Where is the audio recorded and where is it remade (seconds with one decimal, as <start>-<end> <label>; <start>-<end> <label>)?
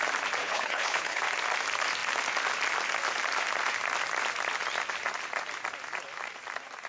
0.0-0.4 recorded; 0.4-1.2 remade; 1.2-6.9 recorded